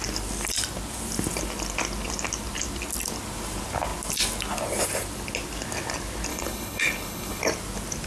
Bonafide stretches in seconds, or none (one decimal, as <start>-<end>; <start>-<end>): 0.0-6.3; 7.4-8.1

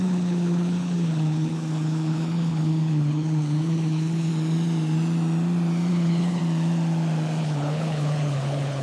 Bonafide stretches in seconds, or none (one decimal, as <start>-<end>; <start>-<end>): 4.3-5.9; 6.4-7.4

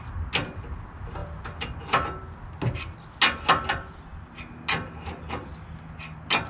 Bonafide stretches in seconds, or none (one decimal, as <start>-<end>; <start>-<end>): 0.0-6.5